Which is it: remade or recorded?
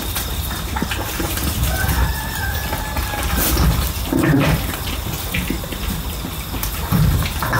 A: recorded